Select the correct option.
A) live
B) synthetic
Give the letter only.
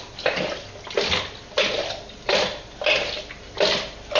A